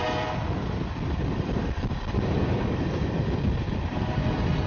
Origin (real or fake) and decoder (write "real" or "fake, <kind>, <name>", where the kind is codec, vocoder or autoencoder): fake, vocoder, BigVGAN v2